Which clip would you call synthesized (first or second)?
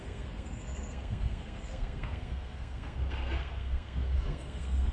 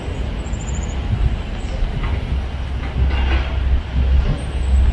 first